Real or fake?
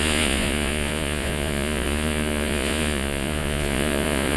fake